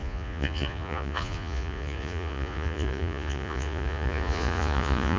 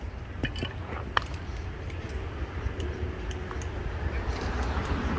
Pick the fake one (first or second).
first